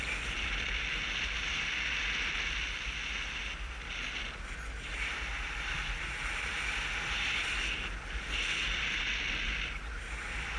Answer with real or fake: real